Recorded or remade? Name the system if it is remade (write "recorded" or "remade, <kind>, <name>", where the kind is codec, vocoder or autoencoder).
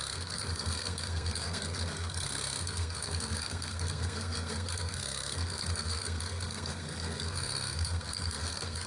remade, codec, SNAC